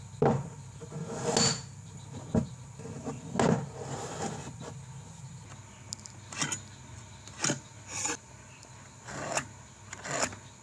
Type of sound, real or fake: real